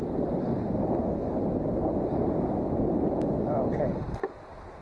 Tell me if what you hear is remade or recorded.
recorded